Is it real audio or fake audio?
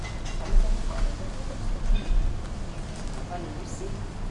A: real